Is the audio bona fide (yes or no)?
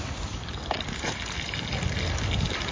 yes